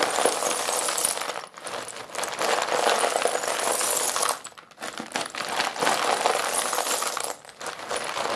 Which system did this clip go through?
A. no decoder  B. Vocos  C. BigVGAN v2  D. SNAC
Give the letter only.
A